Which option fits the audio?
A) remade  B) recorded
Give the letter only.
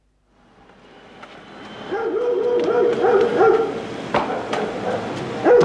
B